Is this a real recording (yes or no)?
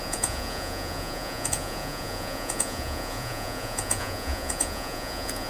no